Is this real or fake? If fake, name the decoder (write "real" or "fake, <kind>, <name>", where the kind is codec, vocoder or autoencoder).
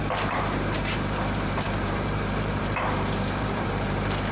fake, vocoder, BigVGAN v2